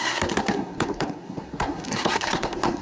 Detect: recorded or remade remade